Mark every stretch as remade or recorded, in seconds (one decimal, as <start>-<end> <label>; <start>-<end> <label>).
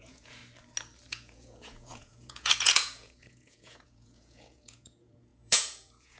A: 0.0-0.4 remade; 0.4-1.1 recorded; 1.1-6.2 remade